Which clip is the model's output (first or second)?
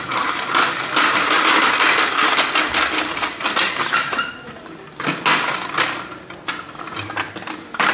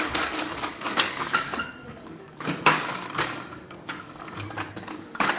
second